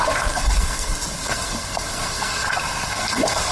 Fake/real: fake